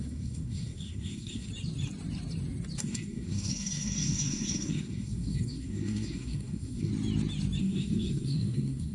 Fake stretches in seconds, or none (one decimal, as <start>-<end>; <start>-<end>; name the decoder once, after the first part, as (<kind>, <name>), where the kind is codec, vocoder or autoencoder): 0.0-1.5 (codec, SNAC); 2.8-6.9; 7.6-8.9